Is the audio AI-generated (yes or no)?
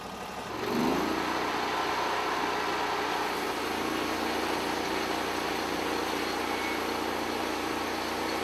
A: no